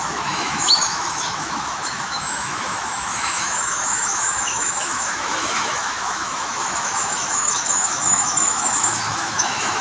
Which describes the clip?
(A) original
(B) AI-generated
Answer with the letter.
B